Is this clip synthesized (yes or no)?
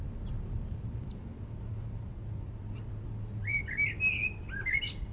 no